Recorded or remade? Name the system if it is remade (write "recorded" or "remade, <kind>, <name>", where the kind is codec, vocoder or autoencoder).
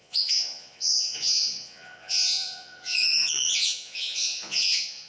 remade, vocoder, Vocos